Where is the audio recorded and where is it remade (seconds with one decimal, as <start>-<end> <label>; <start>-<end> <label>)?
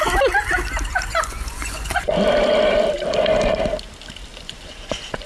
0.0-1.1 recorded; 1.1-2.1 remade; 2.1-4.3 recorded; 4.3-5.3 remade